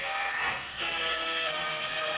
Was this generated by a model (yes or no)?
yes